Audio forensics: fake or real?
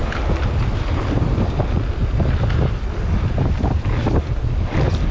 real